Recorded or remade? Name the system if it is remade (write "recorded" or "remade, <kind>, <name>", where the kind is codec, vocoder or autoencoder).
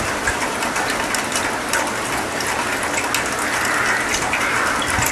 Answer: recorded